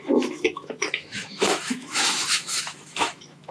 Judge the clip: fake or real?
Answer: fake